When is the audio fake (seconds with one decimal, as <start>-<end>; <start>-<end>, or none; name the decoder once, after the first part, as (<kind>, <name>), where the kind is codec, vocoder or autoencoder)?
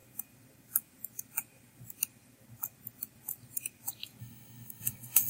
4.2-5.3 (codec, DAC)